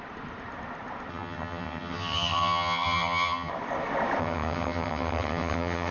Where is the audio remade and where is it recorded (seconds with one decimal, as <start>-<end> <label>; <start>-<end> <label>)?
0.0-1.1 recorded; 1.1-3.5 remade; 3.5-4.2 recorded; 4.2-5.9 remade